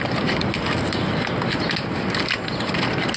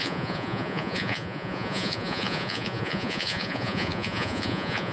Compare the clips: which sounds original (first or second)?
first